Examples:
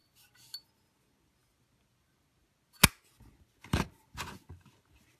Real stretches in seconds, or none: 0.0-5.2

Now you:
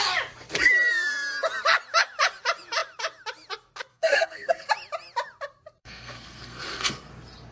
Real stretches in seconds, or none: 0.0-3.9; 4.7-5.8; 7.1-7.5

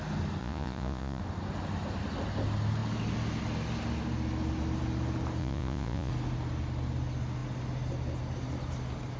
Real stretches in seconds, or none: 0.0-0.4; 1.2-5.4; 6.1-9.2

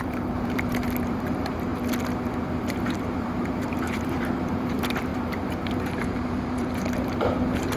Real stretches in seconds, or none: 1.7-3.1